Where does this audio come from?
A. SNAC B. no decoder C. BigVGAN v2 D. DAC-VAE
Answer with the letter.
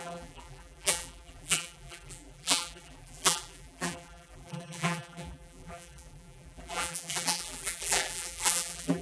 C